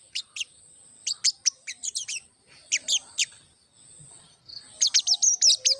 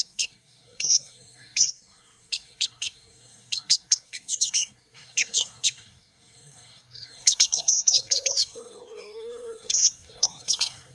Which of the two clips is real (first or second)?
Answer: first